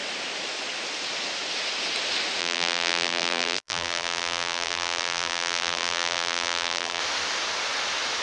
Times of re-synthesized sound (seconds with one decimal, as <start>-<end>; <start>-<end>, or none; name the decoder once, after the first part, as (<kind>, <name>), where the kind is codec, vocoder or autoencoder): 2.4-7.0 (vocoder, BigVGAN v2)